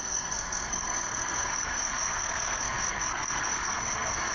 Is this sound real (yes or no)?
no